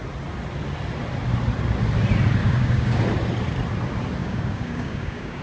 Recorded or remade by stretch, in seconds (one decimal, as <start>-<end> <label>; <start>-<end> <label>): 0.0-2.4 recorded; 2.4-3.0 remade; 3.0-4.2 recorded; 4.2-5.4 remade